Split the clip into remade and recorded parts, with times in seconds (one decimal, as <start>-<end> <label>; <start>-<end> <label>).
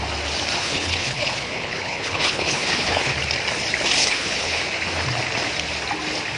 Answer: 0.0-0.6 recorded; 0.6-3.1 remade; 3.1-4.0 recorded; 4.0-4.6 remade; 4.6-6.4 recorded